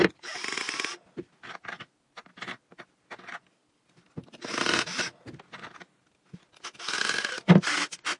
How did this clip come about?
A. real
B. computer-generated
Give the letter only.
A